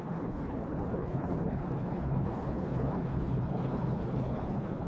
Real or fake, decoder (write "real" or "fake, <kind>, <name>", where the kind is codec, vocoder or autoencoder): fake, codec, HILCodec